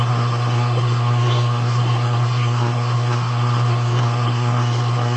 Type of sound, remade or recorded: remade